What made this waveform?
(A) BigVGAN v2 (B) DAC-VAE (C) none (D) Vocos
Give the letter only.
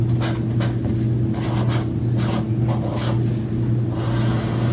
C